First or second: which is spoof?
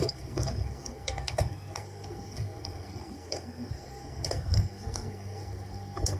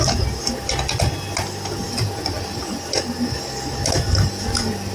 first